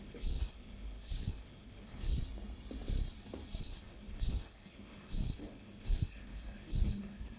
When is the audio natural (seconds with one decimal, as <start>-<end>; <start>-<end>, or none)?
2.2-3.6